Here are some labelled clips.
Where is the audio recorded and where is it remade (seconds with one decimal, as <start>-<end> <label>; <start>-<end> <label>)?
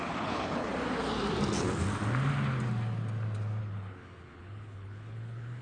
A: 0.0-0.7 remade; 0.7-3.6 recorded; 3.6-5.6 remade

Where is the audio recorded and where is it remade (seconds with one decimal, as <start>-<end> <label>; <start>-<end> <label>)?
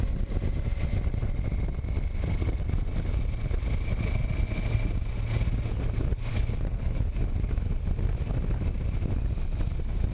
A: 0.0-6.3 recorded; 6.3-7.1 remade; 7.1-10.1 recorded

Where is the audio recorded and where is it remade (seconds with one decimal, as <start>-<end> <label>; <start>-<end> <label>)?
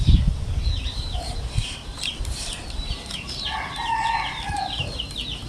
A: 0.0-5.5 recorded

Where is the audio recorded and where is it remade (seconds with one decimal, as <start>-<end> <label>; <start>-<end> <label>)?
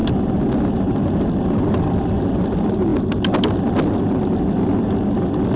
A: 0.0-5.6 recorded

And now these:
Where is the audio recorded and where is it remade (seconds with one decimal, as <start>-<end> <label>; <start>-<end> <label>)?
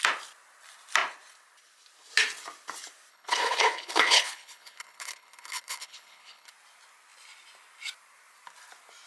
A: 0.0-3.1 recorded; 3.1-6.5 remade; 6.5-9.1 recorded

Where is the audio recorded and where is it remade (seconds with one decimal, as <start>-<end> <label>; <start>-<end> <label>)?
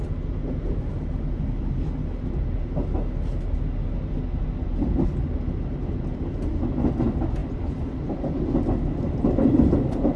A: 0.0-10.2 recorded